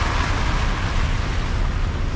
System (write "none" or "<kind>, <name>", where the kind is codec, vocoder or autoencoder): none